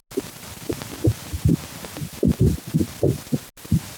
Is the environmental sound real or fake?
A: real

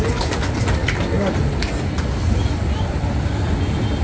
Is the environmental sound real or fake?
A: real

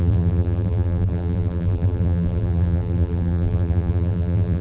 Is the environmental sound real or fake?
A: fake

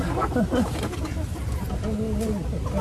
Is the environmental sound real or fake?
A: real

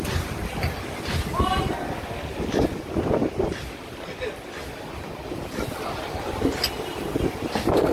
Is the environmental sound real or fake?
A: real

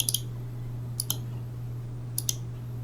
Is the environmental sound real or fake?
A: real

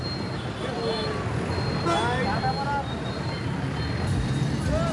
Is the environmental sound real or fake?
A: real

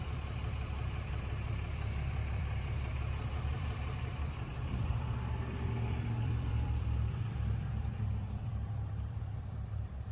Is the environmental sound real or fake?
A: fake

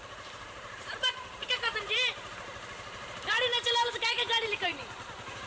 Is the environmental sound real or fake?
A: fake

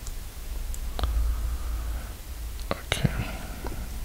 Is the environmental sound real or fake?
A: real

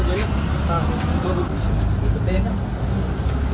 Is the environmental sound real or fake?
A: real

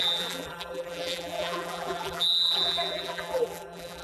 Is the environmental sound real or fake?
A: fake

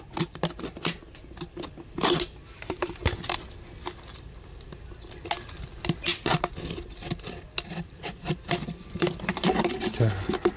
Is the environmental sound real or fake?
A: real